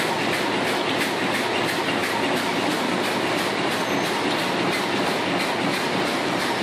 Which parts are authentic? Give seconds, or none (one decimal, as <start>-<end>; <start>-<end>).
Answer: 0.0-6.6